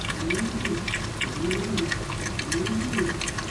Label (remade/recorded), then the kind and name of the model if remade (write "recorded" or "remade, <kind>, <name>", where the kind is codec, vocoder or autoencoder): recorded